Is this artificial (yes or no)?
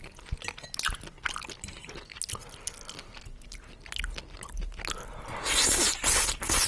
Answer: no